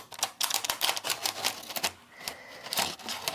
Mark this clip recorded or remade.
recorded